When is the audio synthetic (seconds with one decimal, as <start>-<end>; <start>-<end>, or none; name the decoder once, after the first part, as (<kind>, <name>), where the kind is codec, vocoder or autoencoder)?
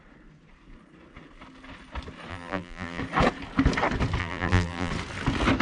2.3-3.0 (vocoder, BigVGAN v2); 4.2-4.9